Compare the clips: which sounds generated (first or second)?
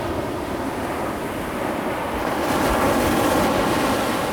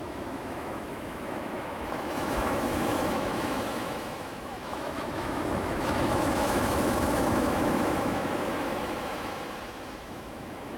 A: second